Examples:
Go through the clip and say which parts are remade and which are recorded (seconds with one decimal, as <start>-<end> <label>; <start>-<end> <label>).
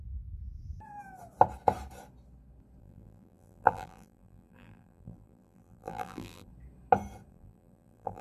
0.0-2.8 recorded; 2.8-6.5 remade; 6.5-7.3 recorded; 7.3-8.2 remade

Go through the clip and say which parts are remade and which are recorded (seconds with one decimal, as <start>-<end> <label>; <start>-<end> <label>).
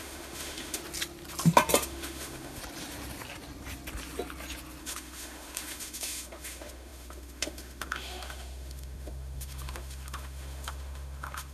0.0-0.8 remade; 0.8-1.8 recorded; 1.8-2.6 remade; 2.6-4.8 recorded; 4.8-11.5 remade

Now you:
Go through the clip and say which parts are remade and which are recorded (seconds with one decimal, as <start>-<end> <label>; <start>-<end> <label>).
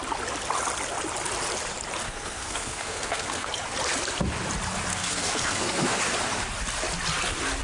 0.0-2.0 recorded; 2.0-3.5 remade; 3.5-4.9 recorded; 4.9-6.0 remade; 6.0-7.6 recorded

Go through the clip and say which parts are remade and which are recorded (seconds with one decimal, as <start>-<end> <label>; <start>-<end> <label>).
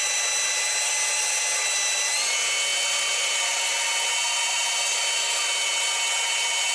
0.0-6.7 recorded